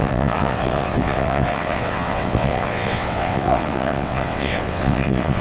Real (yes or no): no